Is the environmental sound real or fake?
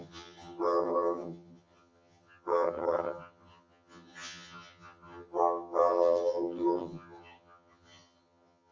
fake